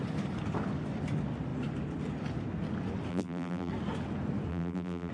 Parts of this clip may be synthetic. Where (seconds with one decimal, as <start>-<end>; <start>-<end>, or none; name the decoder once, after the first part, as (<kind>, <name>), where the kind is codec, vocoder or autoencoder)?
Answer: 3.1-3.7 (vocoder, BigVGAN v2); 4.5-5.1